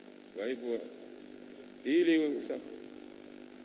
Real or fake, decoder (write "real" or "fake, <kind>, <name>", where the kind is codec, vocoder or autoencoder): fake, codec, DAC